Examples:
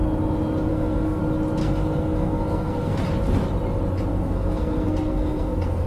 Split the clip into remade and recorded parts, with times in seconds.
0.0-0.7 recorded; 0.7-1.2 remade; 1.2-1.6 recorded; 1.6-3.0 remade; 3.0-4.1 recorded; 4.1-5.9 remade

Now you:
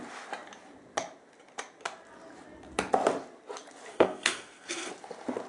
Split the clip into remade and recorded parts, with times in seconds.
0.0-3.9 recorded; 3.9-4.9 remade; 4.9-5.5 recorded

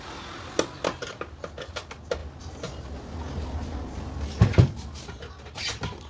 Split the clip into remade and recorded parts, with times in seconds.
0.0-6.1 recorded

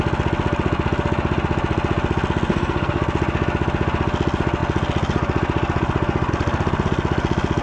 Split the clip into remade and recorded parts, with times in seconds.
0.0-2.5 recorded; 2.5-3.0 remade; 3.0-7.6 recorded

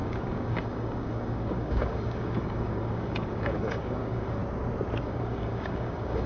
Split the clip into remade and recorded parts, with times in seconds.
0.0-4.4 remade; 4.4-5.0 recorded; 5.0-6.3 remade

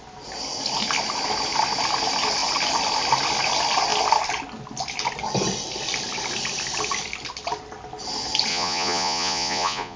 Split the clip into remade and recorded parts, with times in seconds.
0.0-8.5 recorded; 8.5-10.0 remade

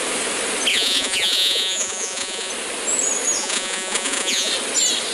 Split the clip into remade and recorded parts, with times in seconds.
0.0-0.7 recorded; 0.7-2.5 remade; 2.5-3.4 recorded; 3.4-4.5 remade; 4.5-5.1 recorded

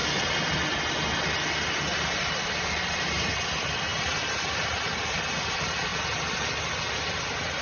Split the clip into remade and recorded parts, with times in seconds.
0.0-2.3 recorded; 2.3-5.9 remade; 5.9-7.6 recorded